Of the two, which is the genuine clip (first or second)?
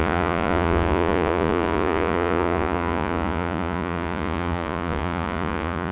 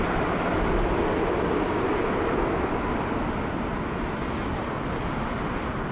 second